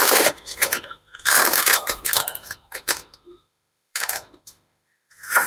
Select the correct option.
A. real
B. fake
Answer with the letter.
B